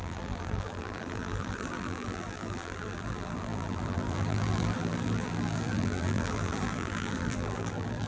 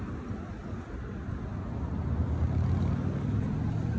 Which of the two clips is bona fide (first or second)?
second